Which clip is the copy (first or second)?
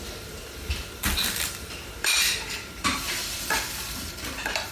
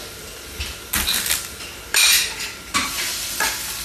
first